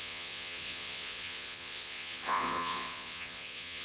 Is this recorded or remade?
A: remade